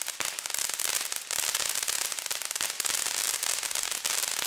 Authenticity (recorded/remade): recorded